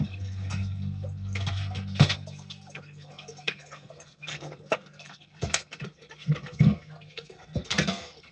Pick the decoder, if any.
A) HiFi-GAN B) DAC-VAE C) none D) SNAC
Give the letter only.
D